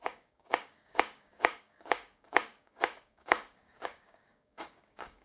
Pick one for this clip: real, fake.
fake